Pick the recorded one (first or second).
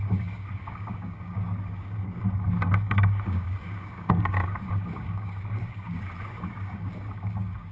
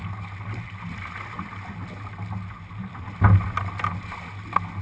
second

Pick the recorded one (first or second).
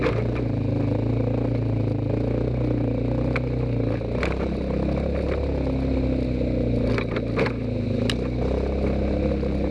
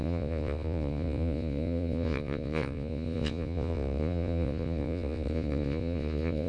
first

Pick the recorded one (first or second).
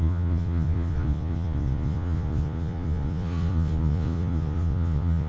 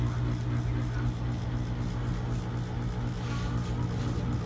second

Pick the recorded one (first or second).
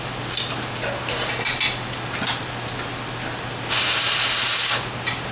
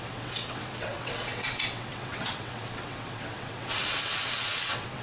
first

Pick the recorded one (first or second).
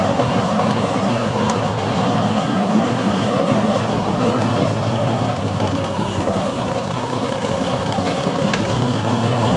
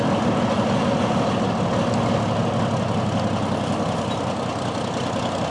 second